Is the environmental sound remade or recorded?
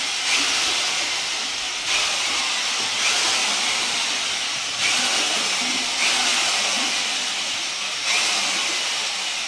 recorded